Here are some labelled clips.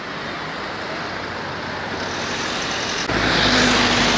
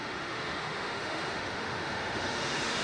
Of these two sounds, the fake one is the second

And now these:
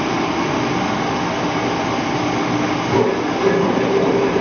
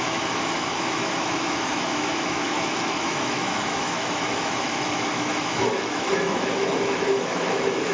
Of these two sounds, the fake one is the second